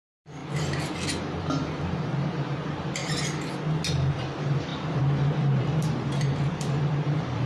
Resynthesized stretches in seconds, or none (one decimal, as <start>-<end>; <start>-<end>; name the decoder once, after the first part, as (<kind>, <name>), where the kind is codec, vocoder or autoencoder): 0.0-0.4 (vocoder, BigVGAN v2); 1.2-3.0; 4.1-7.5